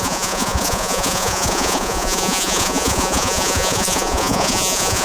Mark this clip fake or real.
fake